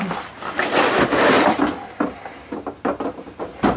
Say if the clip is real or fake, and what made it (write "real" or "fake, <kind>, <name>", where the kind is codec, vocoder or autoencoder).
fake, vocoder, BigVGAN v2